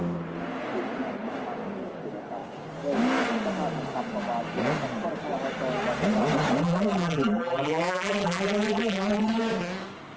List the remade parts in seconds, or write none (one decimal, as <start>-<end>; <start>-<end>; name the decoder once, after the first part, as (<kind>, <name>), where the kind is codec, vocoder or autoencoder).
6.6-9.4 (vocoder, BigVGAN v2)